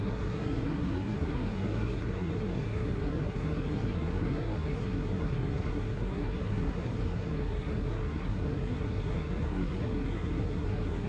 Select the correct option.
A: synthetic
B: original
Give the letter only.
A